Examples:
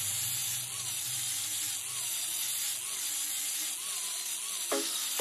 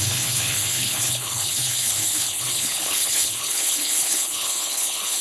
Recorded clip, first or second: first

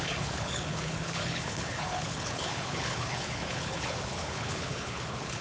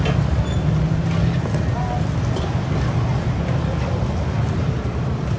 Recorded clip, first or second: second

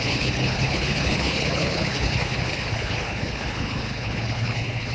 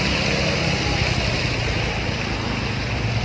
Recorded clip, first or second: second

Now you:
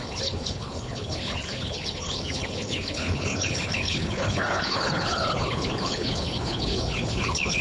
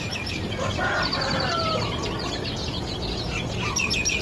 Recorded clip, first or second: second